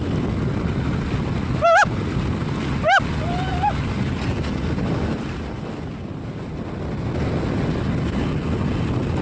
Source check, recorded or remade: recorded